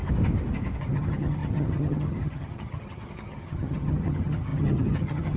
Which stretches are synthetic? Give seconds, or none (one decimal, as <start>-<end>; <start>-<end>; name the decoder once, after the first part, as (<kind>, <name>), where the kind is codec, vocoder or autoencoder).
0.8-5.4 (vocoder, HiFi-GAN)